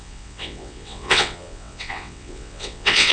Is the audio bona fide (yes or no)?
no